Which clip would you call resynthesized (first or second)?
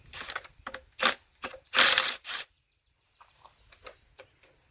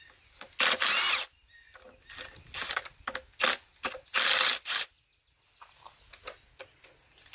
first